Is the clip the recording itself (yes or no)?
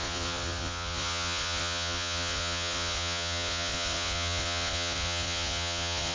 no